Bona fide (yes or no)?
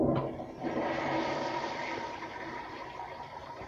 no